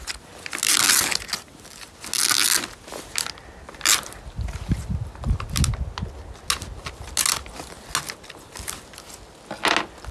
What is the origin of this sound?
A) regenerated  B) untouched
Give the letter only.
B